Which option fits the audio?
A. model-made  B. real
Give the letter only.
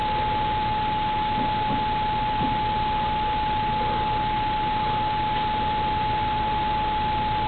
B